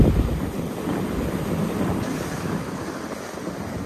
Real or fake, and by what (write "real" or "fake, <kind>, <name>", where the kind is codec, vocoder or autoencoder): real